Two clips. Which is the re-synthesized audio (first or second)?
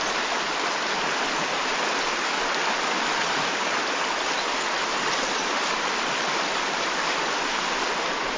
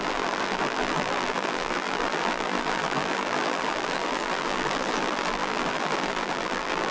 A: second